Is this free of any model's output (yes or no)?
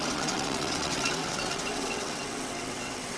no